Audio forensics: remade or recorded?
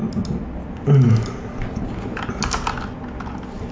recorded